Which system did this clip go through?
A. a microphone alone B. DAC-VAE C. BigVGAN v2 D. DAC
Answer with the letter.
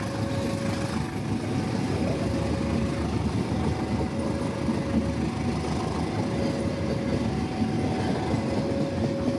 A